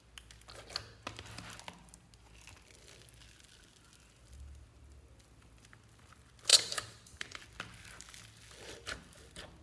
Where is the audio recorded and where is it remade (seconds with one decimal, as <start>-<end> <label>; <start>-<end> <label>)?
0.0-6.5 recorded; 6.5-7.4 remade; 7.4-9.6 recorded